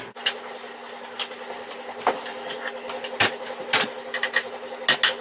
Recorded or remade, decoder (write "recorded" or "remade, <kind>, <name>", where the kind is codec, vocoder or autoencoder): recorded